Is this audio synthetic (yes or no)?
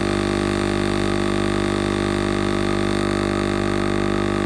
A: no